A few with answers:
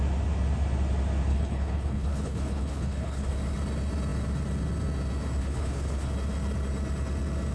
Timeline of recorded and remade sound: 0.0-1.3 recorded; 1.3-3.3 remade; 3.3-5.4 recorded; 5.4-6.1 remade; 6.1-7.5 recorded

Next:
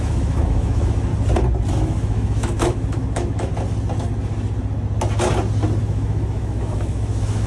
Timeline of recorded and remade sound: 0.0-1.1 remade; 1.1-1.7 recorded; 1.7-3.5 remade; 3.5-5.8 recorded; 5.8-7.5 remade